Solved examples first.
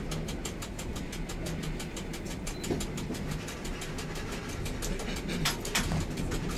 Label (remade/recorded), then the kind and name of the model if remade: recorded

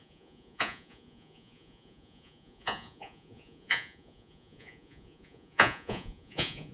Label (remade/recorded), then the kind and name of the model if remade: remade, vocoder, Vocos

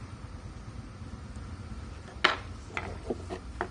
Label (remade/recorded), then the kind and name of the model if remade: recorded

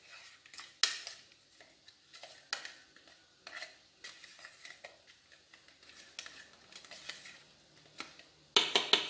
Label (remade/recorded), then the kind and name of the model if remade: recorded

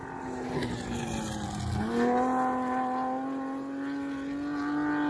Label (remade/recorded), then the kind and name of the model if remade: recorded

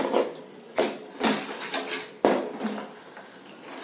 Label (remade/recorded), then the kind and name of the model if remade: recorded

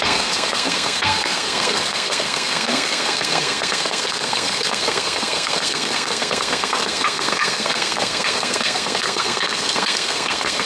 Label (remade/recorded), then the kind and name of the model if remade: remade, codec, SNAC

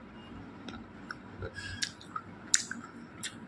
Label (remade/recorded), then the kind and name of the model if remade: recorded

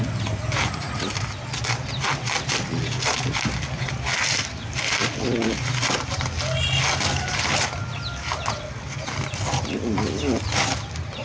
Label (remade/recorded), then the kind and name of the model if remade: recorded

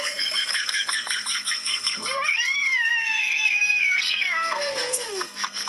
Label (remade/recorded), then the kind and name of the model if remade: remade, codec, SNAC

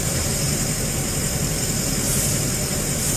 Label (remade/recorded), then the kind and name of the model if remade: remade, vocoder, BigVGAN v2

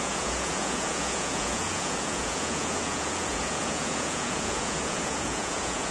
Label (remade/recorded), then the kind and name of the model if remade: remade, vocoder, Vocos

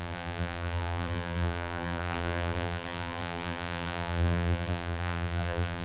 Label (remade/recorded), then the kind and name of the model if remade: remade, vocoder, BigVGAN v2